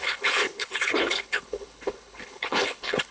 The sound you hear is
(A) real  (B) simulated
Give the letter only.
B